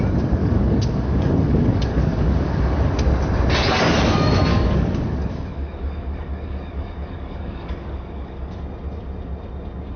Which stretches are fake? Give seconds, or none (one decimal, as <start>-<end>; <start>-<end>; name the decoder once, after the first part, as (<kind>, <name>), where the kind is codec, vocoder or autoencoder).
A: 0.4-2.9 (codec, DAC); 4.5-8.6